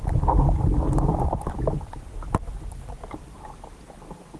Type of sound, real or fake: real